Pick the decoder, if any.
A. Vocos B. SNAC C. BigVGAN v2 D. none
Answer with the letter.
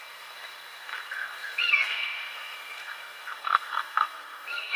B